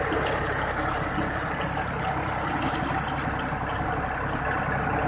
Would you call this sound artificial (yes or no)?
no